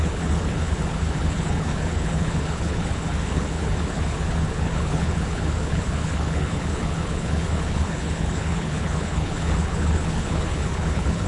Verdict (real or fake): fake